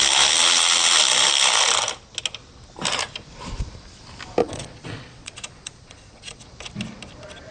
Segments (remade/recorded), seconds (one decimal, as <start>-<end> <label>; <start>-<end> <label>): 0.0-4.4 recorded; 4.4-6.4 remade; 6.4-7.5 recorded